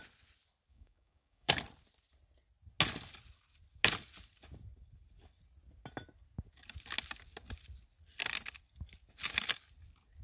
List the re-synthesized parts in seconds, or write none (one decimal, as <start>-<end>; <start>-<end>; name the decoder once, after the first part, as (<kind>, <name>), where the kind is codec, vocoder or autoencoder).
0.7-1.5 (codec, DAC)